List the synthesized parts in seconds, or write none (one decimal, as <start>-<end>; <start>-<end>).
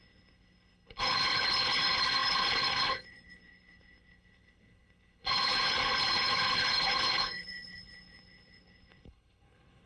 0.0-9.9